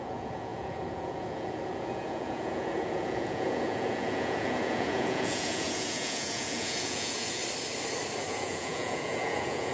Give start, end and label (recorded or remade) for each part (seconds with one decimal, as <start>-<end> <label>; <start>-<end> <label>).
0.0-7.4 remade; 7.4-8.3 recorded; 8.3-9.7 remade

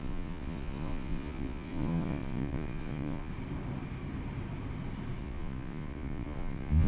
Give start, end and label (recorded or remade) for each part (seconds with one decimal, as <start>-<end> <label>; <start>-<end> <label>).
0.0-3.3 remade; 3.3-5.2 recorded; 5.2-6.9 remade